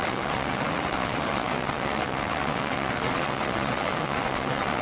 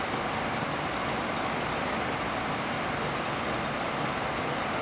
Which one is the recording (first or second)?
second